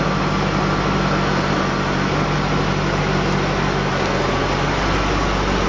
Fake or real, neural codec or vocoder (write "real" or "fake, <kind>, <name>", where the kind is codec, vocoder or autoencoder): real